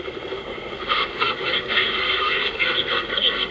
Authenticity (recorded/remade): remade